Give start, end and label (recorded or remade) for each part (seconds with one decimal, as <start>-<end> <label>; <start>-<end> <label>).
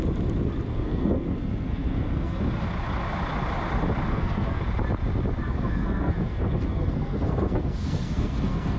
0.0-0.7 recorded; 0.7-2.4 remade; 2.4-4.1 recorded; 4.1-4.6 remade; 4.6-5.4 recorded; 5.4-8.8 remade